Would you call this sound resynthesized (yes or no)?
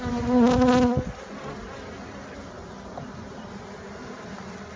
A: no